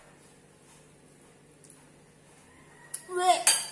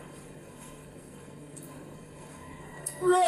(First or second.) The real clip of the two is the first